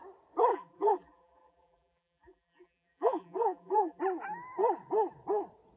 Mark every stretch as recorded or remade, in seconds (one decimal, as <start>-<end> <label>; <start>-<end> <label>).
0.0-0.5 recorded; 0.5-4.0 remade; 4.0-5.8 recorded